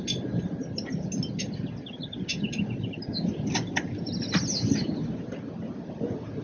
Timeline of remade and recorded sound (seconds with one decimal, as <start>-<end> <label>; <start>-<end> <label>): 0.0-6.4 recorded